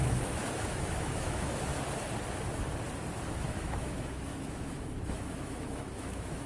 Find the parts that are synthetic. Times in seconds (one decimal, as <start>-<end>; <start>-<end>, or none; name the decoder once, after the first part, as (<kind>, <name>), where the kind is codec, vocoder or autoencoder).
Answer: 0.0-1.7 (autoencoder, DAC-VAE); 3.3-6.5